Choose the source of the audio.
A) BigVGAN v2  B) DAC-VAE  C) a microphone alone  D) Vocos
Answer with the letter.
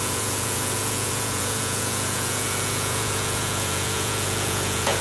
D